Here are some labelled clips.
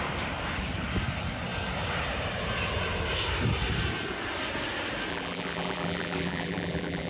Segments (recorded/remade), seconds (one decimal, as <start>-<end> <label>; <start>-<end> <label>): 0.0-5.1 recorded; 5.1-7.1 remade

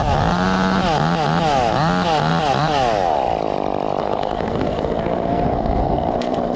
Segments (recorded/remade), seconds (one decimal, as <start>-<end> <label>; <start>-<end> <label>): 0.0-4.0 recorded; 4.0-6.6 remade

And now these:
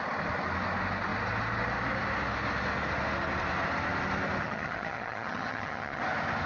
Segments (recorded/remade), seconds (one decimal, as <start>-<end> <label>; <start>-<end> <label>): 0.0-4.4 recorded; 4.4-6.0 remade; 6.0-6.5 recorded

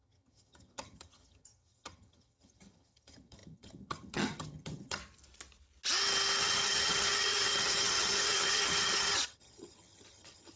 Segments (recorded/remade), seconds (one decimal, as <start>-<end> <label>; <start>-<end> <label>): 0.0-5.0 remade; 5.0-6.4 recorded; 6.4-10.6 remade

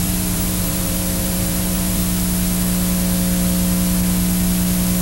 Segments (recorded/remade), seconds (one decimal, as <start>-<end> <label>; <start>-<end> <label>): 0.0-2.0 remade; 2.0-5.0 recorded